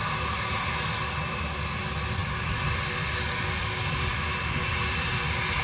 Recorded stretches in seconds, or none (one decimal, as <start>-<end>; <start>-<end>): 0.0-2.2; 2.8-4.1